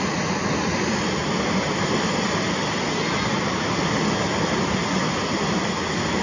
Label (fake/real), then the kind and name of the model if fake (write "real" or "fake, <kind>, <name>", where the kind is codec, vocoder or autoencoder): real